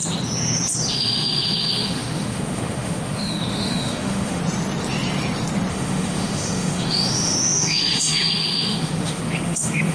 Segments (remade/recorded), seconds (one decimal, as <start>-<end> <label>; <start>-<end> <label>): 0.0-0.9 recorded; 0.9-4.4 remade; 4.4-5.7 recorded; 5.7-9.9 remade